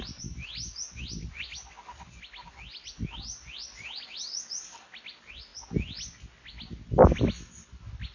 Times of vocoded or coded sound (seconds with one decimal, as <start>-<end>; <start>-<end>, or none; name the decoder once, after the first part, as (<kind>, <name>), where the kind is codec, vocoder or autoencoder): none